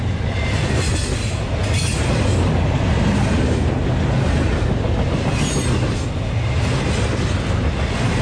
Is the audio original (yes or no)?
yes